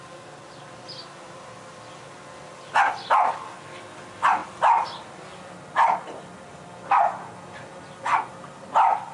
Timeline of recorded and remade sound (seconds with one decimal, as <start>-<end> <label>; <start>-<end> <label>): 0.0-9.1 recorded